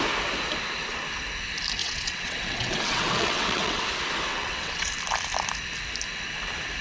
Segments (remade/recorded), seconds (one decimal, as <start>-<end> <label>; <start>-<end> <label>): 0.0-1.8 recorded; 1.8-3.8 remade; 3.8-4.3 recorded; 4.3-4.9 remade; 4.9-6.8 recorded